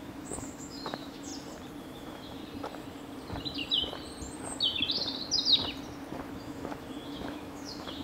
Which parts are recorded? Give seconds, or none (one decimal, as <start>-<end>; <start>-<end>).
1.3-1.8; 2.4-6.3

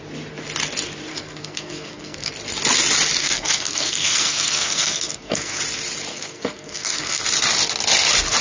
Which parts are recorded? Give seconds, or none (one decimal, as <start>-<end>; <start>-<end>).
0.0-1.1; 2.3-3.2; 5.6-6.1; 7.2-8.4

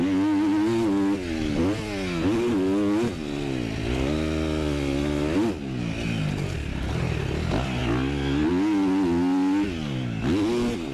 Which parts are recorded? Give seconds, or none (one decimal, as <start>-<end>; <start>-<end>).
0.0-10.9